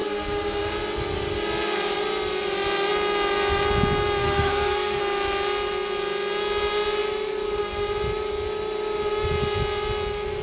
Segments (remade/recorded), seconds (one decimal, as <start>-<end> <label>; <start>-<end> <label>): 0.0-4.2 recorded; 4.2-5.0 remade; 5.0-10.4 recorded

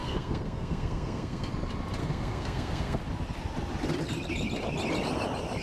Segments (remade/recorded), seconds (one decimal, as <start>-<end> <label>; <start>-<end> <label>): 0.0-1.5 remade; 1.5-2.0 recorded; 2.0-3.0 remade; 3.0-5.6 recorded

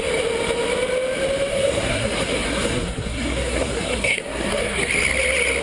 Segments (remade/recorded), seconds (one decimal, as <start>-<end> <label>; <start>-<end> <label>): 0.0-1.5 recorded; 1.5-4.9 remade; 4.9-5.6 recorded

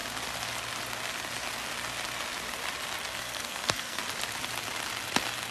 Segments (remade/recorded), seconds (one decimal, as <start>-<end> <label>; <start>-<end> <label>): 0.0-3.2 recorded; 3.2-4.0 remade; 4.0-5.5 recorded

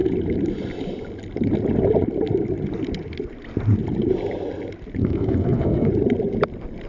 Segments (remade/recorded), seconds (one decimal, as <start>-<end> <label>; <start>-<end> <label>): 0.0-5.0 recorded; 5.0-5.9 remade; 5.9-6.9 recorded

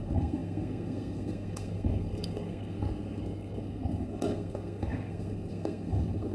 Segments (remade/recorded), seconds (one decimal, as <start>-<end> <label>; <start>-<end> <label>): 0.0-6.3 remade

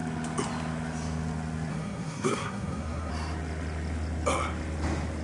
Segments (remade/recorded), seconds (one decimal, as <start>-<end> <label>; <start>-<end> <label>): 0.0-1.7 recorded; 1.7-3.1 remade; 3.1-5.2 recorded